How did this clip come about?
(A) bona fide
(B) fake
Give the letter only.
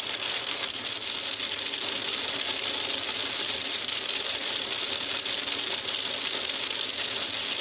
A